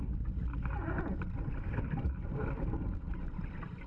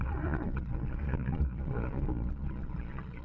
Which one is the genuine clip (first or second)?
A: first